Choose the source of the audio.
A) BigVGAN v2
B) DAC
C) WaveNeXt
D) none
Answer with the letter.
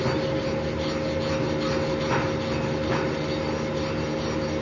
D